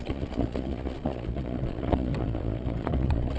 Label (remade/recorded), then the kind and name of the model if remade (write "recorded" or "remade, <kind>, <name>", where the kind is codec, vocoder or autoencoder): remade, vocoder, Vocos